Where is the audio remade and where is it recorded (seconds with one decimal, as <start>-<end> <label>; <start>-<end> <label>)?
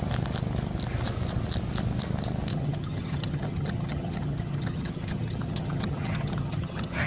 0.0-2.5 recorded; 2.5-7.1 remade